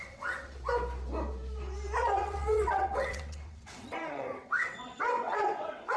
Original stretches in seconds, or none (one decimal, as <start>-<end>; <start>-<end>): 0.6-2.2